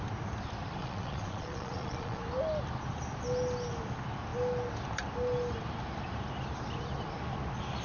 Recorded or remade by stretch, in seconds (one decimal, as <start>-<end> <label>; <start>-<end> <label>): 0.0-0.8 recorded; 0.8-2.2 remade; 2.2-7.8 recorded